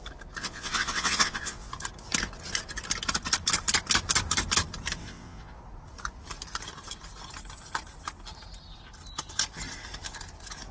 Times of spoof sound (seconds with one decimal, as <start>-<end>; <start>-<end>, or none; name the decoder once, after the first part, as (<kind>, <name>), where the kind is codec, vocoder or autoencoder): 0.4-1.7 (vocoder, WaveNeXt); 5.0-5.6